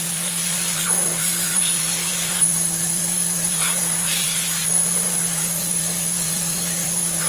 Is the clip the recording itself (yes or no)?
no